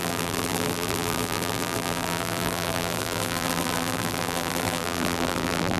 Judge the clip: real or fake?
fake